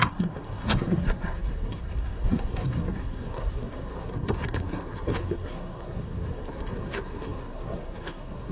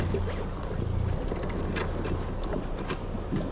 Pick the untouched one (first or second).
second